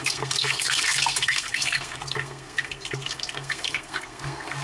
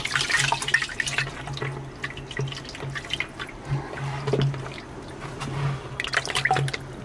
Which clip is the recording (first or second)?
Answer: second